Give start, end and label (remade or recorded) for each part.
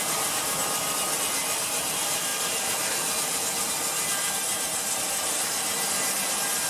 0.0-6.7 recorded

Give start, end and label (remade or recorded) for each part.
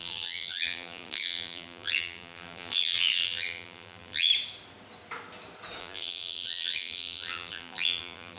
0.0-4.3 remade; 4.3-5.8 recorded; 5.8-8.4 remade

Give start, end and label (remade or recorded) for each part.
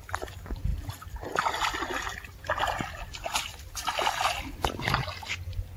0.0-5.8 recorded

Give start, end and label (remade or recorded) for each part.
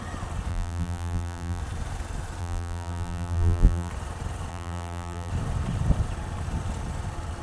0.0-0.5 recorded; 0.5-1.6 remade; 1.6-2.4 recorded; 2.4-3.9 remade; 3.9-4.5 recorded; 4.5-5.3 remade; 5.3-7.4 recorded